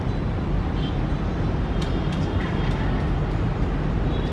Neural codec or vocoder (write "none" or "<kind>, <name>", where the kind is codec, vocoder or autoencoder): none